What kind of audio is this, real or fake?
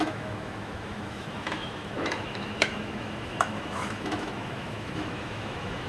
fake